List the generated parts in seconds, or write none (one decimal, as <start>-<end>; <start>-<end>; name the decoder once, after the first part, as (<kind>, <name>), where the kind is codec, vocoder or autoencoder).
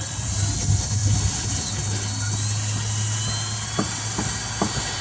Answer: none